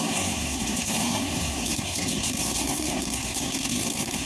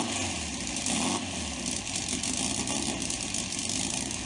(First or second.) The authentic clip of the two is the second